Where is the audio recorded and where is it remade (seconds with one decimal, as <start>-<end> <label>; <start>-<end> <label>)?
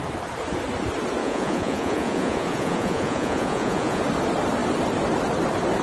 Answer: 0.0-1.2 recorded; 1.2-4.0 remade; 4.0-5.8 recorded